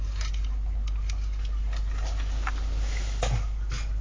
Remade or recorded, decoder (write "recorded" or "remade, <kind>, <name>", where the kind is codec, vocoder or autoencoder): recorded